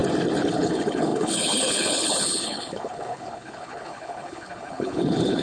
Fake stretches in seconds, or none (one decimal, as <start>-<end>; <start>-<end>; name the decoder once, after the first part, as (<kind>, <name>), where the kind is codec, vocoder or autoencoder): 0.5-5.4 (codec, HILCodec)